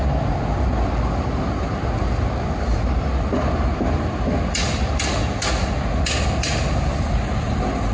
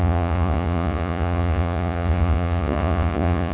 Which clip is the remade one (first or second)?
second